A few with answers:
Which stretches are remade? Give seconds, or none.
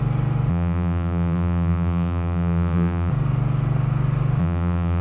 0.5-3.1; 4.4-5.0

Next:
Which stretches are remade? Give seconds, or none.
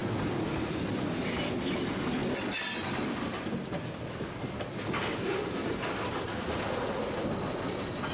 0.0-1.0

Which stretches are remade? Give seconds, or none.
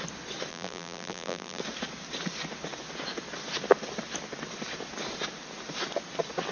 0.5-1.6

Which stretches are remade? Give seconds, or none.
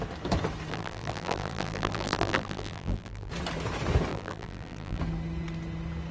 0.7-3.3; 4.1-5.0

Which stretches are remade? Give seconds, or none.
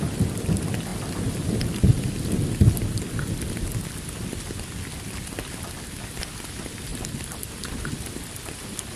0.9-2.5; 6.9-7.9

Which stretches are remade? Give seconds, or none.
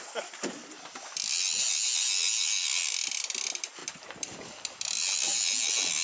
none